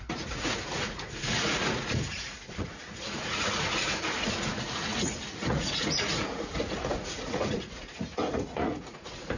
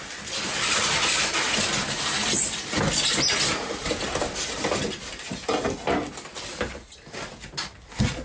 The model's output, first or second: first